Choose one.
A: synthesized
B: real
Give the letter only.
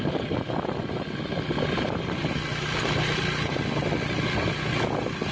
B